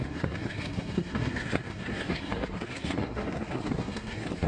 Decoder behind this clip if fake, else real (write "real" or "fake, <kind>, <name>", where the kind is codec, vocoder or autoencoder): fake, codec, SNAC